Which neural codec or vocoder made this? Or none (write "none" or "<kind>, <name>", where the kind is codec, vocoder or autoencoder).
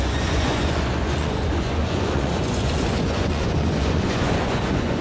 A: vocoder, Vocos